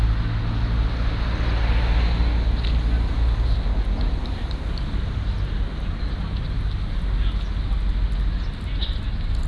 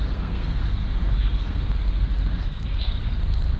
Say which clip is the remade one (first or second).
second